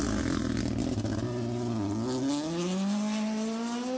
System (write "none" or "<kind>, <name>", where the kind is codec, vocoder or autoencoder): none